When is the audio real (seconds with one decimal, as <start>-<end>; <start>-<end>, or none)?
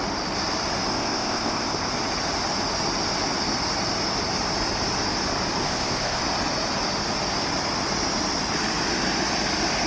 0.0-0.9; 1.9-5.6; 6.2-9.9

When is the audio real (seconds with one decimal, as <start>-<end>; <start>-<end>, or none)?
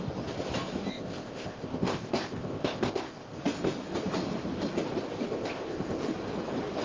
0.0-0.9; 3.4-5.3; 6.0-6.8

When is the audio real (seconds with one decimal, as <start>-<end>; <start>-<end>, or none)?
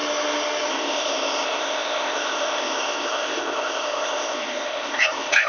0.0-0.7